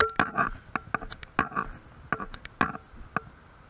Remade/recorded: recorded